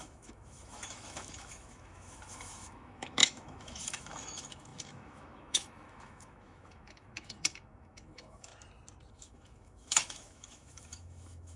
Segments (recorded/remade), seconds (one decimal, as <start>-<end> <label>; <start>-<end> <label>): 0.0-8.5 remade; 8.5-9.1 recorded; 9.1-11.6 remade